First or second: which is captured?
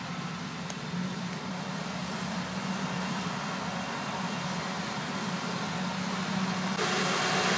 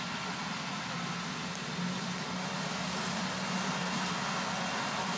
second